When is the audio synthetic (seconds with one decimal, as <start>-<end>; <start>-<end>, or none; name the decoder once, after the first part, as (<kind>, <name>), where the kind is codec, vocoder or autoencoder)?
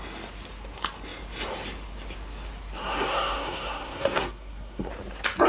2.8-4.9 (codec, SNAC)